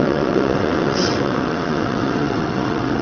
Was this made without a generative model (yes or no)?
no